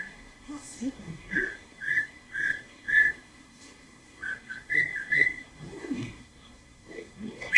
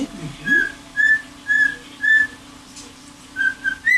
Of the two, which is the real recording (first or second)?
second